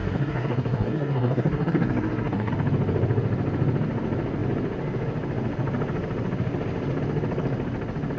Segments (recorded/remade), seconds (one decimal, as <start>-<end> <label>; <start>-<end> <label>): 0.0-2.5 remade; 2.5-8.2 recorded

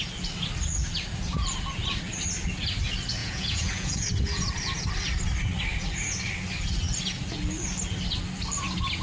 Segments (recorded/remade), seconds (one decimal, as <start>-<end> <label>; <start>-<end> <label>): 0.0-3.2 recorded; 3.2-4.0 remade; 4.0-9.0 recorded

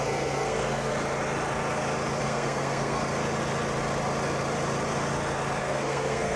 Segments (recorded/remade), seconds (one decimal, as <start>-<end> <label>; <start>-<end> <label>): 0.0-0.9 remade; 0.9-2.2 recorded; 2.2-3.0 remade; 3.0-5.6 recorded; 5.6-6.4 remade

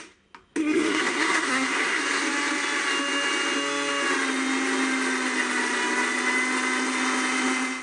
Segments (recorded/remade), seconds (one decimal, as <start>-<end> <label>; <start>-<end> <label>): 0.0-0.6 recorded; 0.6-2.0 remade; 2.0-7.8 recorded

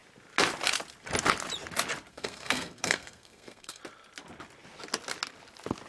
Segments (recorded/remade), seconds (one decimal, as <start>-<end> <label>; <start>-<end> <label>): 0.0-2.1 recorded; 2.1-3.8 remade; 3.8-5.9 recorded